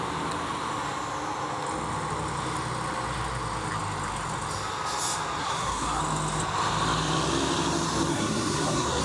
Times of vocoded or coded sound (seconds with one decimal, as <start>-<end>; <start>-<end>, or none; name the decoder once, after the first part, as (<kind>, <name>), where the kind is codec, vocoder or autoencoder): 5.4-6.0 (codec, SNAC); 8.1-9.0